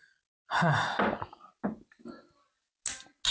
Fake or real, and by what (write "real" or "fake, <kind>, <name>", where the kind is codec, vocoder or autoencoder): real